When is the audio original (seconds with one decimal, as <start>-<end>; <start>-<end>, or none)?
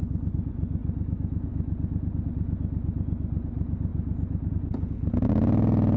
0.0-6.0